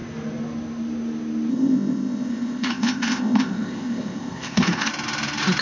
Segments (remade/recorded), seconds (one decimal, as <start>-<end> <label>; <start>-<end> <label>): 0.0-1.5 recorded; 1.5-4.9 remade; 4.9-5.6 recorded